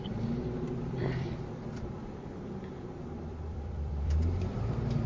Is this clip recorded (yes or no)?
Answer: no